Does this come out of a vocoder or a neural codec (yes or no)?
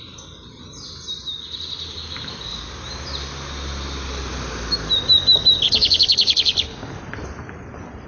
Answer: no